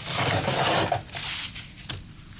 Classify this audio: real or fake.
real